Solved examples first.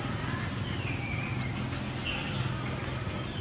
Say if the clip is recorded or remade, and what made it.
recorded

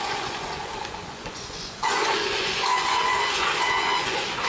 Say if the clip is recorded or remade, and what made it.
remade, vocoder, Vocos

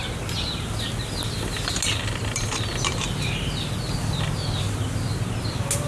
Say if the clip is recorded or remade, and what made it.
recorded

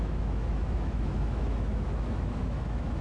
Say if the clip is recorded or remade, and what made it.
remade, autoencoder, DAC-VAE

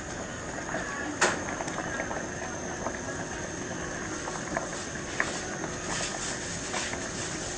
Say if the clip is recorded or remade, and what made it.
recorded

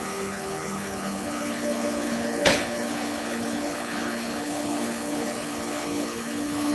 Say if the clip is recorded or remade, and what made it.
remade, codec, HILCodec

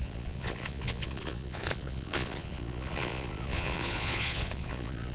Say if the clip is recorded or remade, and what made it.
remade, vocoder, Vocos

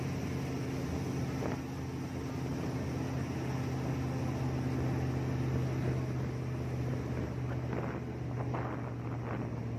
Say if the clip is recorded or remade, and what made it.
recorded